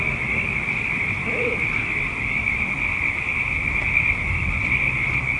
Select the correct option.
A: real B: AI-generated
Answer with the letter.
A